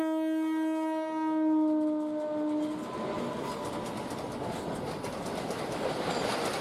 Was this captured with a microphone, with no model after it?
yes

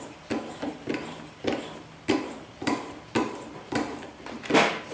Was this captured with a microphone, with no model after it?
no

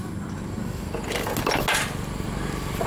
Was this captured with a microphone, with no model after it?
yes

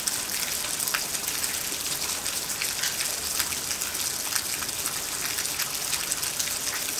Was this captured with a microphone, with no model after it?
yes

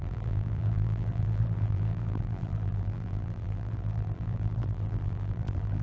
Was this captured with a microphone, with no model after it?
no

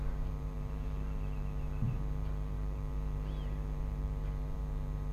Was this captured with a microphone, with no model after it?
no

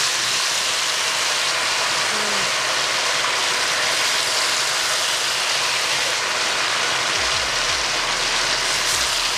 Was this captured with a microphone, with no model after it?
yes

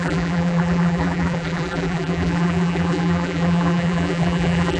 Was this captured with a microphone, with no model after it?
no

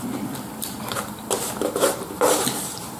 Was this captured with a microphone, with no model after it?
no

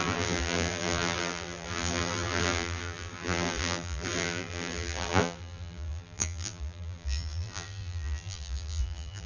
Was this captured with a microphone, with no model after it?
no